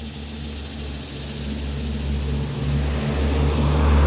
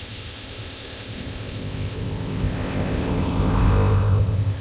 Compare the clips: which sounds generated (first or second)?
second